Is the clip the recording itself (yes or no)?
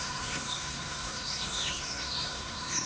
no